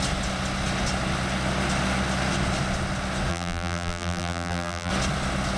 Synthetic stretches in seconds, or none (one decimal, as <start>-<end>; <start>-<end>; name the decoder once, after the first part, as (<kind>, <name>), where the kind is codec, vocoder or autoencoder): 3.3-4.9 (vocoder, BigVGAN v2)